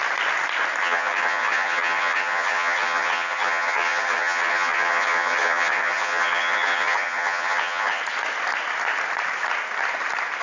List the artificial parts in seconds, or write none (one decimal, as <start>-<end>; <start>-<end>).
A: 0.8-8.0